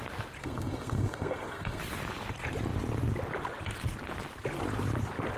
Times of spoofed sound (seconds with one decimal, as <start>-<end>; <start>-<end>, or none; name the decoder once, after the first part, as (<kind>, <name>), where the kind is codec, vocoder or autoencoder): 0.4-1.8 (codec, SNAC)